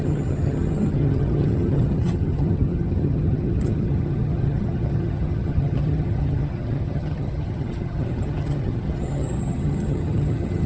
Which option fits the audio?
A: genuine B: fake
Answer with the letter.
B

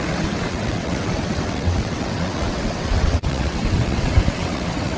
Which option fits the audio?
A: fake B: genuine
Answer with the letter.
A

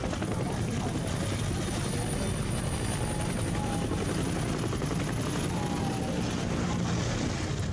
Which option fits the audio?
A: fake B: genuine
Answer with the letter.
B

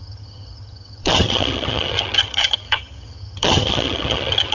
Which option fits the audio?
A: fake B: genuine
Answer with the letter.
A